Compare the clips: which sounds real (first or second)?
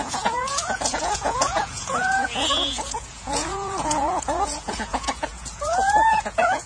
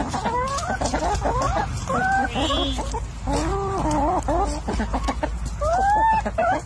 second